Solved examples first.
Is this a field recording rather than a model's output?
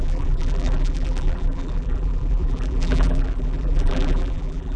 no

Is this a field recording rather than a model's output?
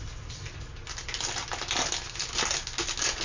yes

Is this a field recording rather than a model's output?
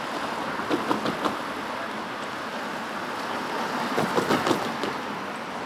yes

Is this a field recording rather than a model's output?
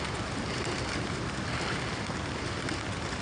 yes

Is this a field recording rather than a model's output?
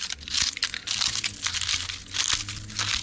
yes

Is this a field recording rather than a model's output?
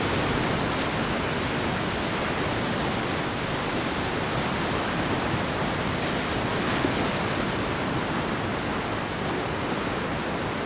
yes